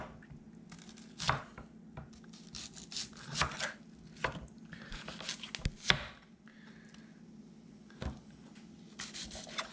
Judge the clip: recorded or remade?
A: recorded